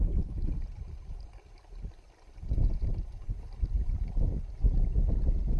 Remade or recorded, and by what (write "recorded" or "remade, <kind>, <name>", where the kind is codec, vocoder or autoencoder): recorded